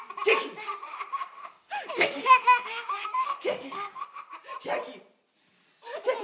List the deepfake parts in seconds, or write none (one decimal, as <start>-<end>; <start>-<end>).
0.6-4.3